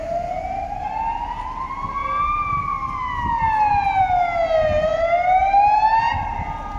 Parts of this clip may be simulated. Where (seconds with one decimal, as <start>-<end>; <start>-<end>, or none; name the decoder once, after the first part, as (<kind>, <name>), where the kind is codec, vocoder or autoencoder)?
none

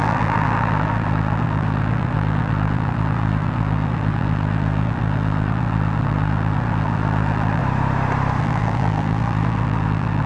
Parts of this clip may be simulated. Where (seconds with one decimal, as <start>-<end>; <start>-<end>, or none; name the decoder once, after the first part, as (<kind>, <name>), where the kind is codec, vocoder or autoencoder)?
0.0-7.6 (vocoder, BigVGAN v2); 8.4-10.3

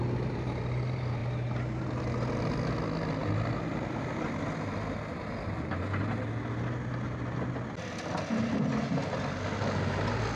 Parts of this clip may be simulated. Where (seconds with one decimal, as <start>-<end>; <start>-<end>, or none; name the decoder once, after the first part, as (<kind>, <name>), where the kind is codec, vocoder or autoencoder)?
none

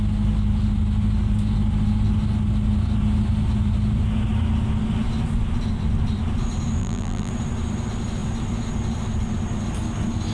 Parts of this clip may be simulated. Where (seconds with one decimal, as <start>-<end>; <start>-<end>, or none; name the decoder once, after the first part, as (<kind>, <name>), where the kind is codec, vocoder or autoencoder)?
6.8-7.3 (vocoder, BigVGAN v2)

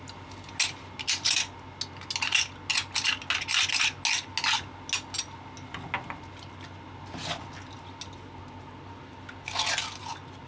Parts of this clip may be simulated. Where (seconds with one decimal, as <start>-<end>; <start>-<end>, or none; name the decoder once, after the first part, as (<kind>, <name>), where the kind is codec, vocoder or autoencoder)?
none

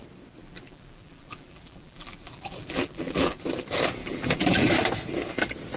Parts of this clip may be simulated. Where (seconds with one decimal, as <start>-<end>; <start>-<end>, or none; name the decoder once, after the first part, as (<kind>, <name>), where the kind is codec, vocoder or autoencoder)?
0.4-3.4 (vocoder, BigVGAN v2); 4.0-4.7

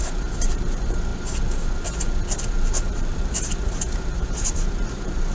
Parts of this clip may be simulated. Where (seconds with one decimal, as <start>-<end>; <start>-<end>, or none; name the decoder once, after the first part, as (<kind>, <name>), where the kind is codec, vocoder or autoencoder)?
0.0-1.1 (vocoder, BigVGAN v2); 2.4-5.3

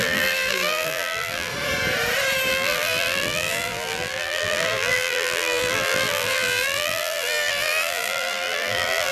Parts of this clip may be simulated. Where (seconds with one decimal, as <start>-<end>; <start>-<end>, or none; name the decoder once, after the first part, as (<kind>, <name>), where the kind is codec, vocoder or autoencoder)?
0.0-1.5 (vocoder, BigVGAN v2); 2.5-9.1